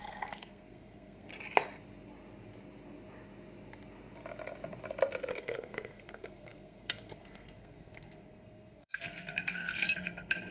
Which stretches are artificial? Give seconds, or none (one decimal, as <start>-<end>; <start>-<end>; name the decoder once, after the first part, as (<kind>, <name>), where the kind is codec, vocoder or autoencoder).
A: 0.0-1.3 (codec, SNAC); 5.3-10.5